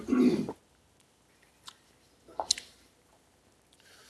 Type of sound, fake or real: real